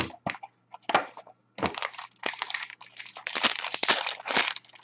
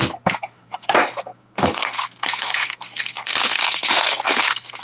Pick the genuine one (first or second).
first